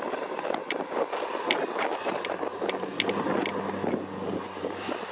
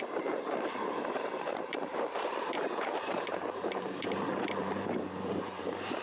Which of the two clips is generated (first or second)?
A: second